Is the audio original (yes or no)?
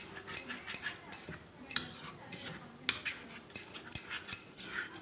yes